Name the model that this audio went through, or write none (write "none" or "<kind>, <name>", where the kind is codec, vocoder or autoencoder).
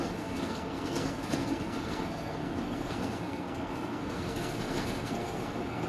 codec, SNAC